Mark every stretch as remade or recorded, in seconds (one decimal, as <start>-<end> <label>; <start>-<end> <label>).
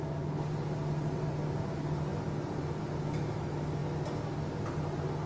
0.0-5.3 recorded